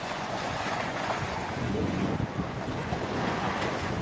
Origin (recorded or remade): remade